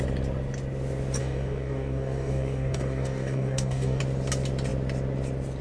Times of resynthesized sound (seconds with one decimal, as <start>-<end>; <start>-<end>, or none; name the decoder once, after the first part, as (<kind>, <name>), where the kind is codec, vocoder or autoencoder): 1.2-4.0 (codec, DAC)